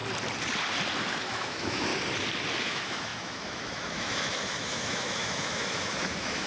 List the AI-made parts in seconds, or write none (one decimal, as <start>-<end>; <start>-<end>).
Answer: 1.1-1.9; 2.6-6.5